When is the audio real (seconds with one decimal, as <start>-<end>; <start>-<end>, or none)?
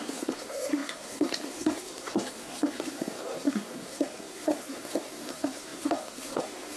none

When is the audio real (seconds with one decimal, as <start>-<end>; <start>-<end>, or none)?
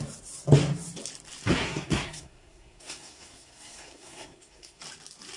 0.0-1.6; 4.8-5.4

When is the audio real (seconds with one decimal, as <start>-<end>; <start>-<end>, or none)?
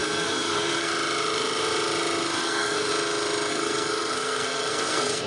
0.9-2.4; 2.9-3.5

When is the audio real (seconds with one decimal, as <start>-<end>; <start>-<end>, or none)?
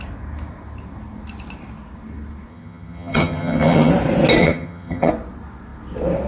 0.0-2.5; 3.9-4.4; 5.1-6.3